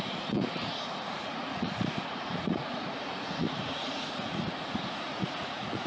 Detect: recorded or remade remade